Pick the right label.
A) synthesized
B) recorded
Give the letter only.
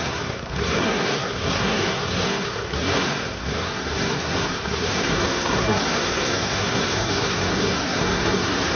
A